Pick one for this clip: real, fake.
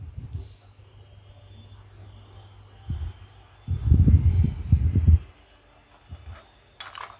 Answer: real